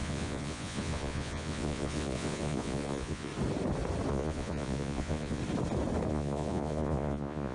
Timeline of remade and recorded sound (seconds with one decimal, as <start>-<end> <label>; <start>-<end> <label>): 0.0-3.3 remade; 3.3-4.1 recorded; 4.1-5.4 remade; 5.4-6.1 recorded; 6.1-7.5 remade